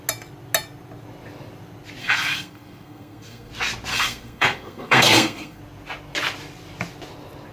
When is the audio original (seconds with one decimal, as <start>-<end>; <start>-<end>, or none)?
0.0-2.0; 3.5-3.9; 5.6-7.5